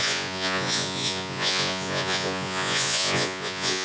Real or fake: fake